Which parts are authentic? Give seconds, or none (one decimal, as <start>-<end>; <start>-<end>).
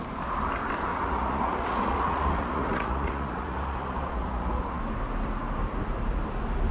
0.0-0.9; 4.8-6.7